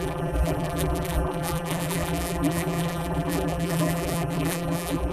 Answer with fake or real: fake